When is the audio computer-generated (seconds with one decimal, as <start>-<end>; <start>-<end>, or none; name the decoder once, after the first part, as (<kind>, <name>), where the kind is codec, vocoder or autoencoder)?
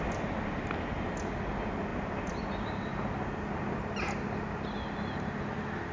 none